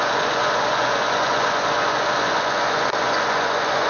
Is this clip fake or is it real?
fake